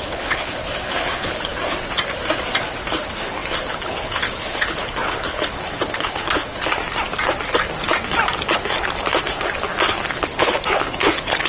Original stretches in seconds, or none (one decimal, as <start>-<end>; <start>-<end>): 1.5-2.9; 6.8-10.1